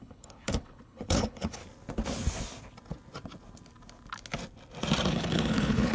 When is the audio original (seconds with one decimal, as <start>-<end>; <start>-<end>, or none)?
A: 1.6-5.1